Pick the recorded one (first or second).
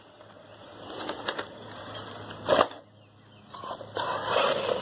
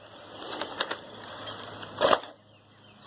first